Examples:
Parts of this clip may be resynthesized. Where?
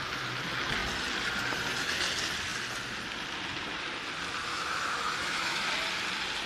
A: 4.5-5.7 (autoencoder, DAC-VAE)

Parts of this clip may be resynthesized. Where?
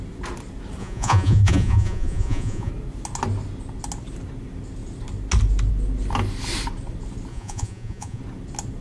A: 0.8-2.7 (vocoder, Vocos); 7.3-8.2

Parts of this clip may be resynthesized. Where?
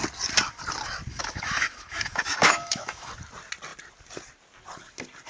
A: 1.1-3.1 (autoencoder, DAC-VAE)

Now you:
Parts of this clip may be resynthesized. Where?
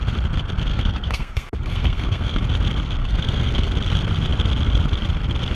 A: 0.7-2.4 (codec, SNAC); 3.0-3.7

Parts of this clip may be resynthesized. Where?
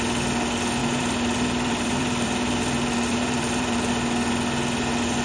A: 0.8-3.9 (vocoder, BigVGAN v2)